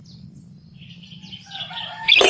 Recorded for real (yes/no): yes